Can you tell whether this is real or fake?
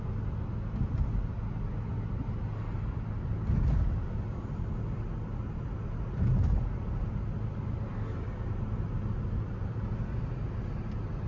real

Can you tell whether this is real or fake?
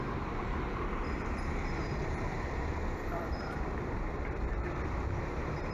fake